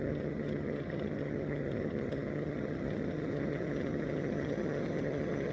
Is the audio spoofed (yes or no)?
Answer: yes